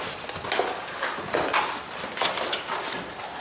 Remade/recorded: recorded